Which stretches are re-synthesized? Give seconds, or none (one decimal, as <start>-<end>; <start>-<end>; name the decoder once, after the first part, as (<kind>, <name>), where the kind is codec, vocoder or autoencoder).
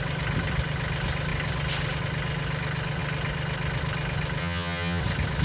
4.4-5.0 (vocoder, HiFi-GAN)